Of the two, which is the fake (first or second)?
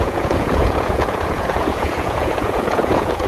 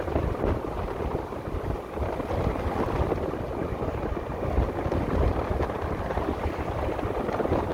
first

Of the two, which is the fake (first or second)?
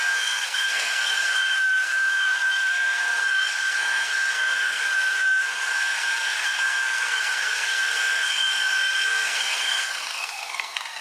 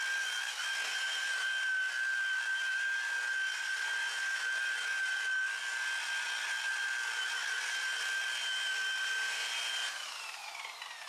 first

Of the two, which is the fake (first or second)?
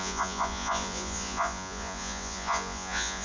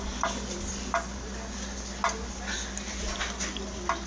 first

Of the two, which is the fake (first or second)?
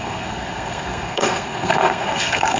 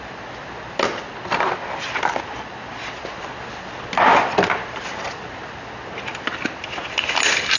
first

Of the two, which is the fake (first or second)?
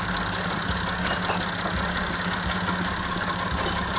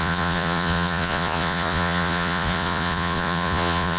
second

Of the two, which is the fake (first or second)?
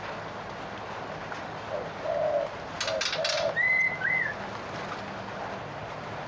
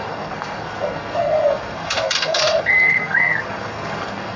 second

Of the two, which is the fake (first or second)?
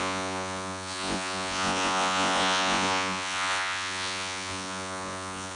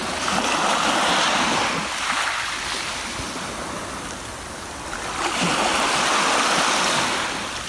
first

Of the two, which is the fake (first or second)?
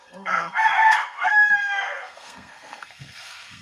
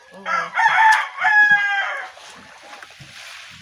first